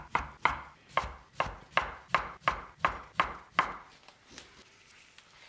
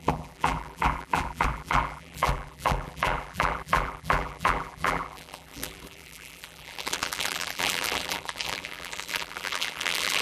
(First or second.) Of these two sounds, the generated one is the second